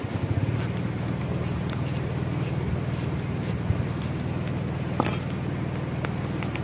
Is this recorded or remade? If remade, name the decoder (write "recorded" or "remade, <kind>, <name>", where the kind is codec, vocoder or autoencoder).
recorded